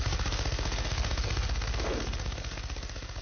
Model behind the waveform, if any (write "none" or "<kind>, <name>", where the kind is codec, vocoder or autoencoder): codec, SNAC